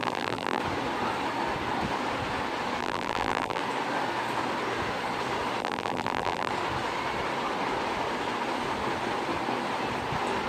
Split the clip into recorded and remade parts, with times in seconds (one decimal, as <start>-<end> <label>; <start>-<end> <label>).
0.0-0.6 remade; 0.6-2.8 recorded; 2.8-3.6 remade; 3.6-5.6 recorded; 5.6-6.5 remade; 6.5-10.5 recorded